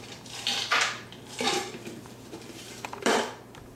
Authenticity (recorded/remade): remade